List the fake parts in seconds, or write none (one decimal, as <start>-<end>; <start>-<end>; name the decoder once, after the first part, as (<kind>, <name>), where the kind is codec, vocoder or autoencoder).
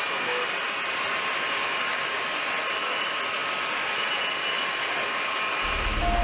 none